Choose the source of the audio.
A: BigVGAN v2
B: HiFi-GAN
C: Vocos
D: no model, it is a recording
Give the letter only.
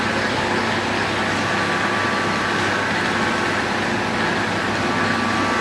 D